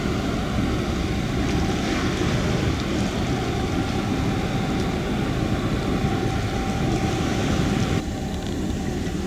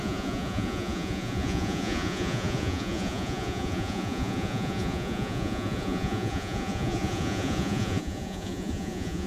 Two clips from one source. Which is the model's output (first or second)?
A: second